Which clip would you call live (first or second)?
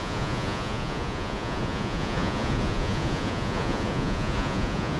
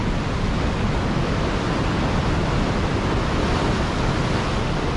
second